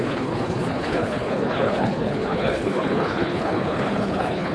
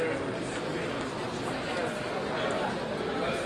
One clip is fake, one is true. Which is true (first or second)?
second